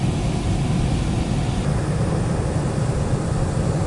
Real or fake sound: real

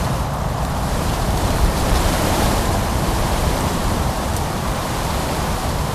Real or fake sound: fake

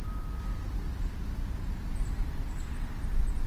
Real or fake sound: real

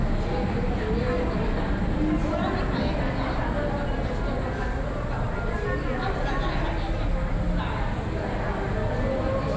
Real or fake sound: real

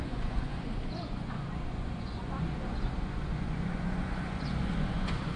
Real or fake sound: fake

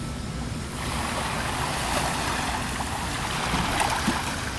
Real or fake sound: real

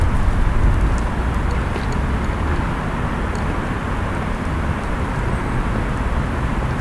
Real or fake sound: real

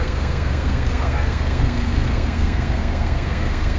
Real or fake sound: fake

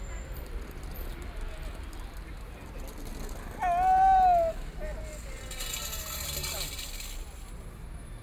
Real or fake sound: real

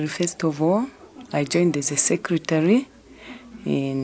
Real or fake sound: real